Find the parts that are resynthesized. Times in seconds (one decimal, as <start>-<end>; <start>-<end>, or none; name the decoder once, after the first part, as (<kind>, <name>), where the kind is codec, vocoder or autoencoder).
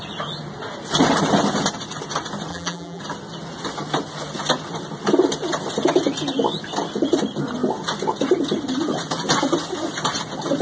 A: 2.5-3.0 (vocoder, BigVGAN v2)